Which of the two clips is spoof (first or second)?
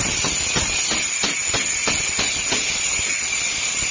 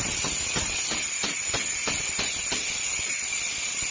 second